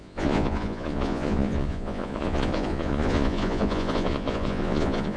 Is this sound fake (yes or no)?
yes